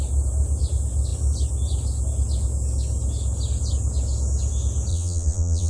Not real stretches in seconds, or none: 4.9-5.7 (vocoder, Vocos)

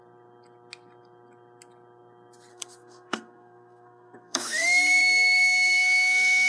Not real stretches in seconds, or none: 2.5-6.5 (codec, SNAC)

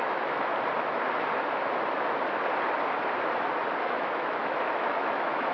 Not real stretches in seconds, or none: 0.0-0.5 (autoencoder, DAC-VAE); 3.8-5.5